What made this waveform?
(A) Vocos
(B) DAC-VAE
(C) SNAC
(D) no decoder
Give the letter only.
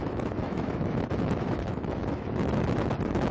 B